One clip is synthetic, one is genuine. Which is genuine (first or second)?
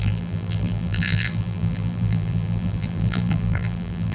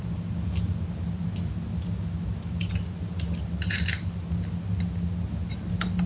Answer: second